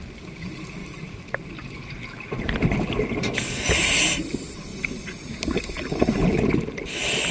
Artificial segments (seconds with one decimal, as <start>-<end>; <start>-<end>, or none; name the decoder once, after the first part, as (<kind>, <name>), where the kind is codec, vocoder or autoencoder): 0.8-1.3 (vocoder, BigVGAN v2)